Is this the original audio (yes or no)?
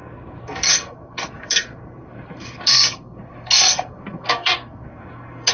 no